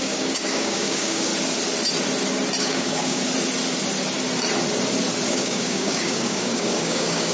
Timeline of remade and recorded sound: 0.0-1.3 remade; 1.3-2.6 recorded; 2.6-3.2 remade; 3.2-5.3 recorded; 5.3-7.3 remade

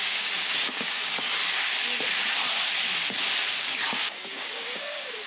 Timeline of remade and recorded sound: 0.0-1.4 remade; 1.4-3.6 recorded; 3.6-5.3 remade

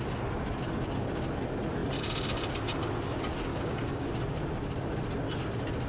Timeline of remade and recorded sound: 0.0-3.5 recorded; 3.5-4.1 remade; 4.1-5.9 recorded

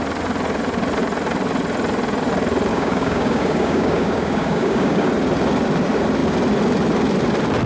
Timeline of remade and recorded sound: 0.0-2.7 recorded; 2.7-5.1 remade; 5.1-7.7 recorded